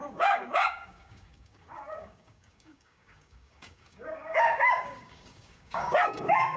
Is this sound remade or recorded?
remade